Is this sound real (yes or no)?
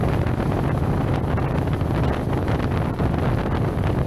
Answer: yes